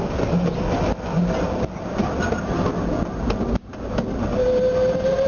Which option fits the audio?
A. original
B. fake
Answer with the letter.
A